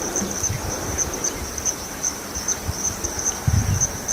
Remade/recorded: remade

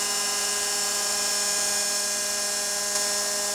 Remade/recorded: recorded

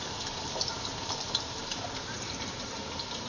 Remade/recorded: remade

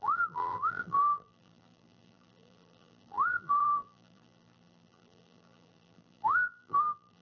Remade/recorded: remade